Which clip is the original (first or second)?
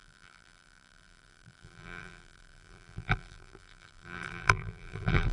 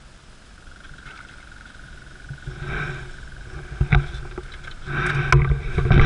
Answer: second